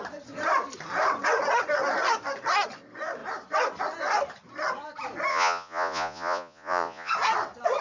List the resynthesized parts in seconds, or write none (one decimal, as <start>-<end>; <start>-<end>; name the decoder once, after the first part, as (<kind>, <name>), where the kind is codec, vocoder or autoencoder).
5.3-7.1 (vocoder, Vocos)